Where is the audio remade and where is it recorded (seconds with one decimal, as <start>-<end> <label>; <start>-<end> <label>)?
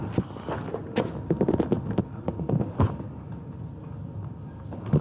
0.0-5.0 recorded